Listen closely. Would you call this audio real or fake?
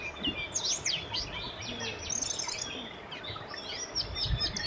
real